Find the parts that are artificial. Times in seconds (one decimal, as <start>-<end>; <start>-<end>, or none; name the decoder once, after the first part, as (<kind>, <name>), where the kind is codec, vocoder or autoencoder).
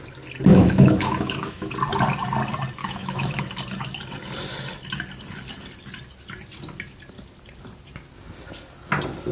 0.5-1.7 (autoencoder, DAC-VAE); 2.8-3.4